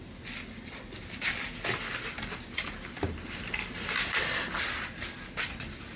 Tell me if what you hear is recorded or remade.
recorded